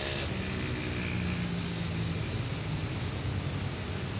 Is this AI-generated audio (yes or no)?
no